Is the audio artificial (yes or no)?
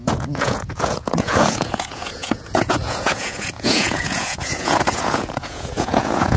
yes